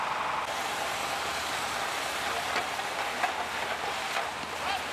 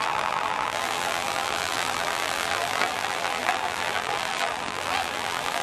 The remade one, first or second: second